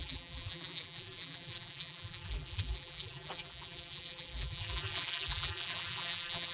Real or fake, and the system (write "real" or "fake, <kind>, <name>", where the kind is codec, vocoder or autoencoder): fake, vocoder, BigVGAN v2